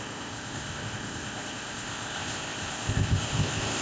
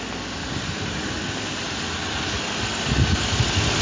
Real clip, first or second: second